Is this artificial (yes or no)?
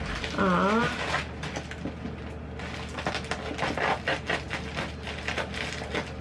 no